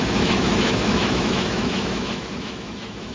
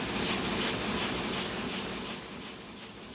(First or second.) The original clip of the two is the second